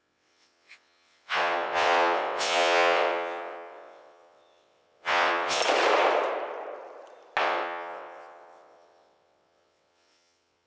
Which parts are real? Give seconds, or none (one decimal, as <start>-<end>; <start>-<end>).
5.6-7.4